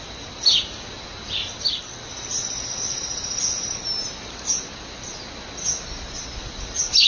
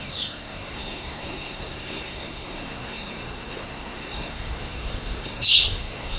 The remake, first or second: second